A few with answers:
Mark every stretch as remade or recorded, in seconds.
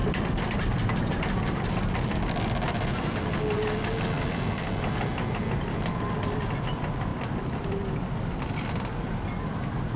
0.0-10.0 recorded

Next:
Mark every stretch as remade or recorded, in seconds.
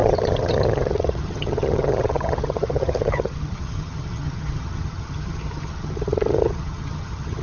0.0-7.4 remade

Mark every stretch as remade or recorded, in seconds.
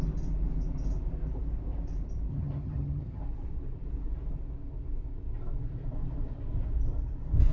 0.0-2.3 recorded; 2.3-3.2 remade; 3.2-7.5 recorded